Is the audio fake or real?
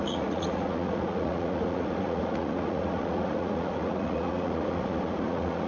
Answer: fake